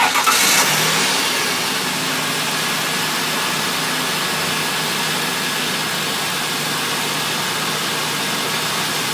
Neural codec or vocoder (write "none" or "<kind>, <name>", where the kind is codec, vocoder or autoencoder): none